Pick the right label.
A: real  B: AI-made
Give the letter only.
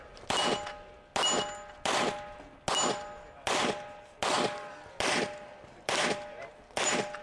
A